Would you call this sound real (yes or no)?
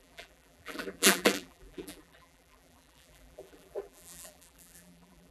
no